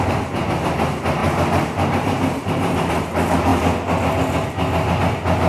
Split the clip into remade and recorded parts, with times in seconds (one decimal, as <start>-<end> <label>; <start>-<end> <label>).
0.0-3.5 remade; 3.5-5.0 recorded; 5.0-5.5 remade